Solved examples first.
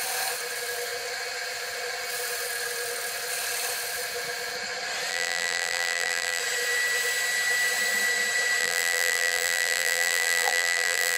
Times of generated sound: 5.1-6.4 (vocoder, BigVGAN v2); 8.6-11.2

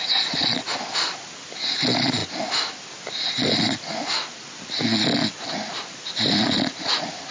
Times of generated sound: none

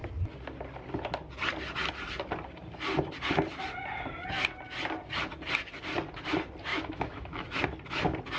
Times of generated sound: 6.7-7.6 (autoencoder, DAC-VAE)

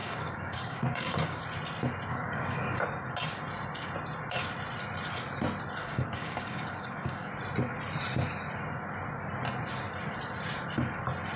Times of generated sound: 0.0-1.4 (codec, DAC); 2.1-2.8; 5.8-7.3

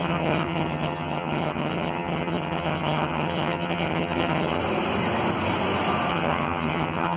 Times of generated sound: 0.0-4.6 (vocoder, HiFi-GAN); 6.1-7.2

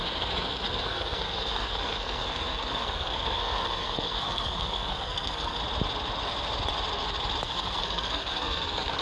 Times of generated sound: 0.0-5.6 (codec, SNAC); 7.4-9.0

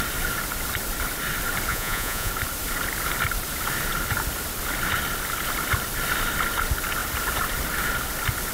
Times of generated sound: 1.7-2.3 (vocoder, Vocos)